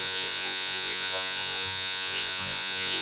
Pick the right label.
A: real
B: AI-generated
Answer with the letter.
B